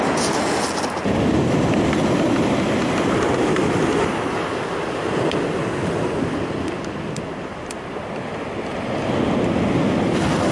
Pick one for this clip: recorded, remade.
recorded